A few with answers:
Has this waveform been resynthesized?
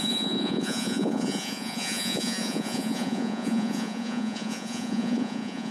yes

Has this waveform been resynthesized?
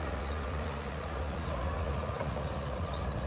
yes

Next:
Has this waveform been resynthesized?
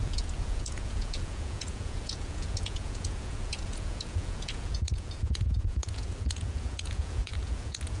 yes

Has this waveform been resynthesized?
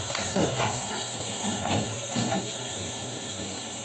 yes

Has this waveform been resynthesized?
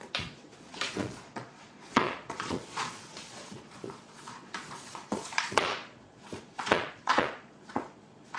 yes